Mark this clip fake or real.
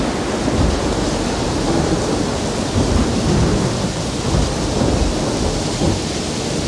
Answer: real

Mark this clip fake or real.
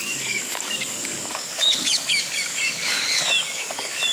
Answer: fake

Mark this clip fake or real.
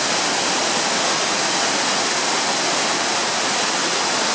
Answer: real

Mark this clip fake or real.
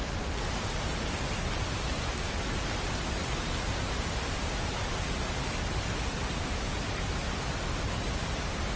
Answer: real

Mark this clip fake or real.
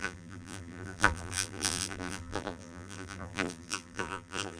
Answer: fake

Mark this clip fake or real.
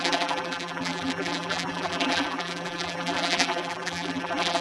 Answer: fake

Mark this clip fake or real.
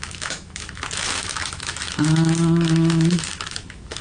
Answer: fake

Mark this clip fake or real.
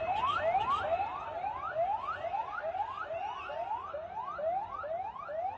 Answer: real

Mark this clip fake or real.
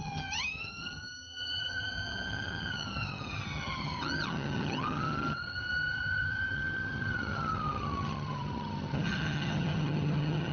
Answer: fake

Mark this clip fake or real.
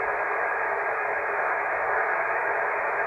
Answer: fake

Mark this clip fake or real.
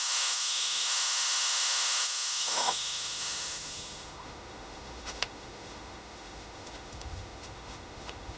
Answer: fake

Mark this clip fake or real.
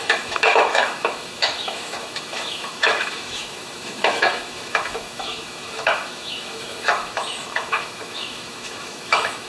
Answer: fake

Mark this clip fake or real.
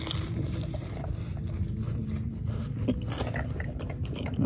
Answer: real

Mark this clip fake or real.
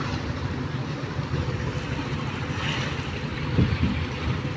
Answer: real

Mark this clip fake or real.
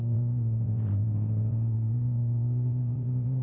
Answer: fake